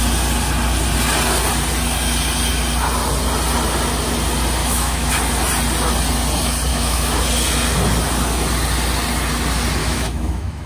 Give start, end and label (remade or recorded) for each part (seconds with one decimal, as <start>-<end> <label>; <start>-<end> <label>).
0.0-4.6 recorded; 4.6-5.1 remade; 5.1-6.7 recorded; 6.7-7.2 remade; 7.2-9.8 recorded; 9.8-10.7 remade